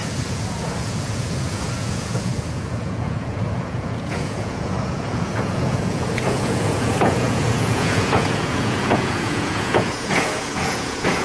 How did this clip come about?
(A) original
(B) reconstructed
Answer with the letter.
B